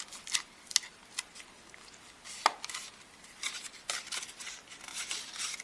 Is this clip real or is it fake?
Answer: real